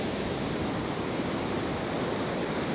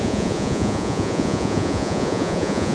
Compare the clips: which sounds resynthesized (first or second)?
second